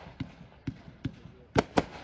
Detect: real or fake real